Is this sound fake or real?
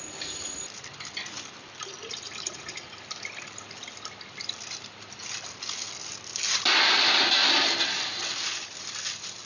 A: real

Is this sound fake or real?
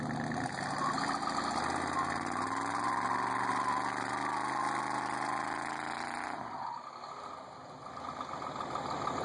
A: real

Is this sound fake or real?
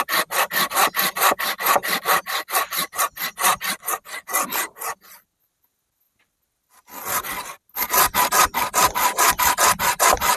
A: real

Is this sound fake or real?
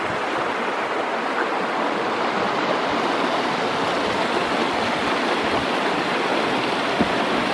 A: real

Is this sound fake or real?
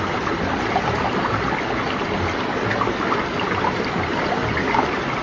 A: real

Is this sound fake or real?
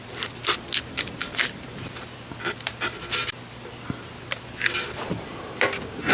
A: real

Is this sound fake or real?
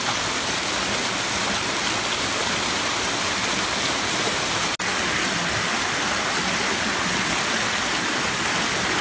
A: real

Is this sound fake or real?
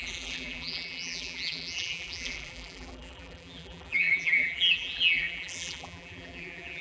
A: fake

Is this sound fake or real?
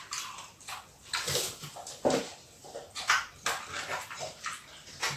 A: real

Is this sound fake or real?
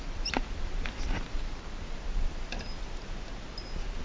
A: real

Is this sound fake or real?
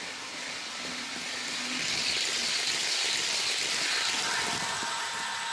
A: real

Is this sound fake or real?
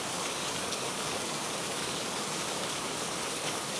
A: fake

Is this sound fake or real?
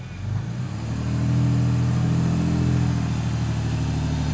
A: real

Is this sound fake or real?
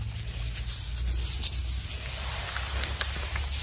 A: real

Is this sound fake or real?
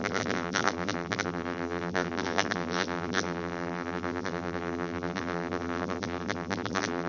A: fake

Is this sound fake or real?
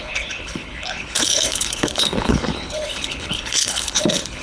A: fake